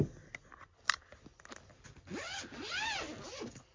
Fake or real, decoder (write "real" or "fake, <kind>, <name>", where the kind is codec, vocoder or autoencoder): real